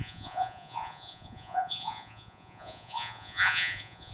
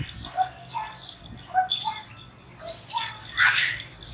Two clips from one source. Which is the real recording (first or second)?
second